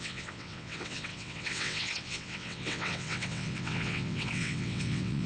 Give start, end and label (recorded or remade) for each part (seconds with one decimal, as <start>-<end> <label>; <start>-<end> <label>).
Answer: 0.0-5.3 remade